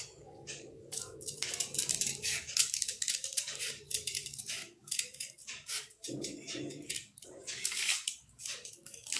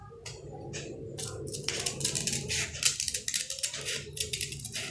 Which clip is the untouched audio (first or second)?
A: second